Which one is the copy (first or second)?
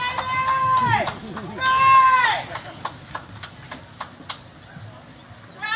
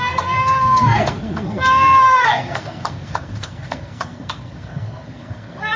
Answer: second